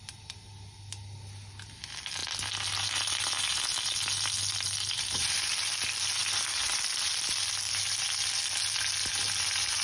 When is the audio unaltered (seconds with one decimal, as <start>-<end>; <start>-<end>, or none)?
0.0-9.8